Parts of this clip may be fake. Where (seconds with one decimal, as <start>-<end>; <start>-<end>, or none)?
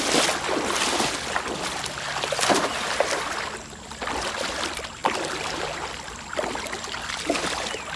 2.7-3.2; 5.0-7.1